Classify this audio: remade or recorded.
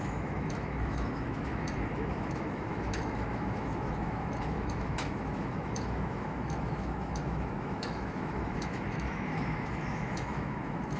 remade